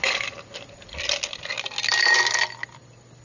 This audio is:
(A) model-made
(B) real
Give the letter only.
B